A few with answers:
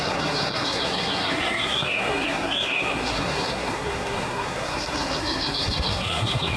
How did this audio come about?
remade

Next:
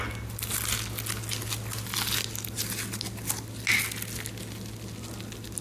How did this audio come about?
recorded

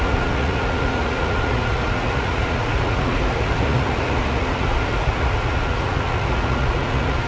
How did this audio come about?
remade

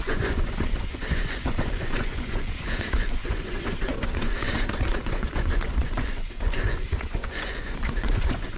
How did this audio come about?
remade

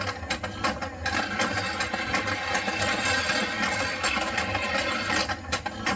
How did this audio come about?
recorded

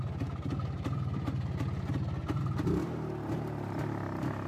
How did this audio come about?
recorded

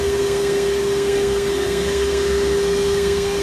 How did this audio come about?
remade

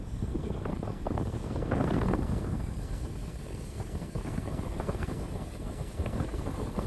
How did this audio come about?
remade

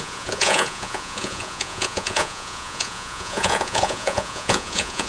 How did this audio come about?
remade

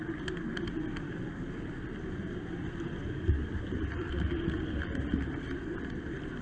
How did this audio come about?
recorded